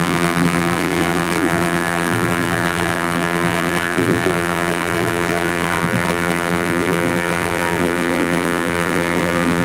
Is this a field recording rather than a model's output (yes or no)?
no